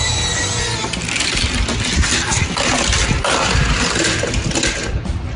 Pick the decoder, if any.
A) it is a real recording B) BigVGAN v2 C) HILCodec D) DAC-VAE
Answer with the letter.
A